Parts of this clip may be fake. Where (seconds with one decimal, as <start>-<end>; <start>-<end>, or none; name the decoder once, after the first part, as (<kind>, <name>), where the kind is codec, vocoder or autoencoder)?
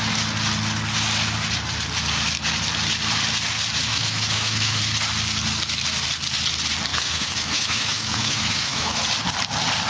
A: 3.9-4.8 (autoencoder, DAC-VAE); 6.9-9.0